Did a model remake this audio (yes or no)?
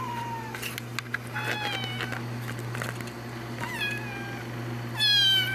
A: no